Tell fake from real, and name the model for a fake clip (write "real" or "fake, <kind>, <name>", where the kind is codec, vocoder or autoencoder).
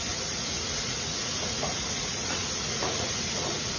fake, vocoder, Vocos